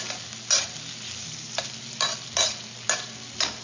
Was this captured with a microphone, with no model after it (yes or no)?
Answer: yes